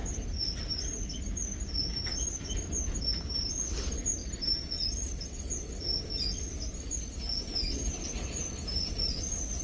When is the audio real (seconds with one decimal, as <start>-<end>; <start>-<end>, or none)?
0.0-9.6